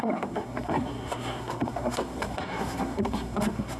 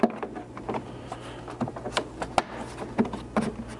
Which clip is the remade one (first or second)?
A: first